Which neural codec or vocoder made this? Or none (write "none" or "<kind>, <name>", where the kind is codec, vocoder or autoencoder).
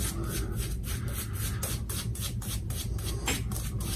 none